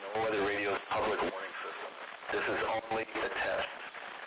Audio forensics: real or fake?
real